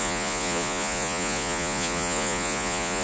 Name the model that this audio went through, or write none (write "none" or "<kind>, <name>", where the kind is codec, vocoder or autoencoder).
vocoder, Vocos